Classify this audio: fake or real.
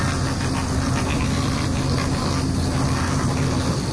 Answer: real